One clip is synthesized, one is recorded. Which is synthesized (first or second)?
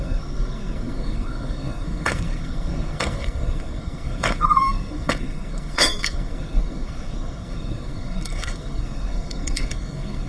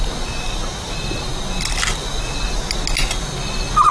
first